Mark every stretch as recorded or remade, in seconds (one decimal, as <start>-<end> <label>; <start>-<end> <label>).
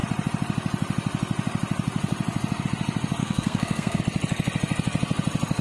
0.0-3.2 recorded; 3.2-4.0 remade; 4.0-5.6 recorded